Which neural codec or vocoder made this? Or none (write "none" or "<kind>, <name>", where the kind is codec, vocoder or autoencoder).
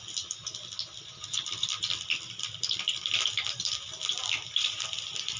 vocoder, BigVGAN v2